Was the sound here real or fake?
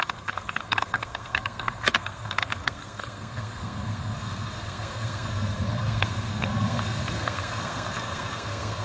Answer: fake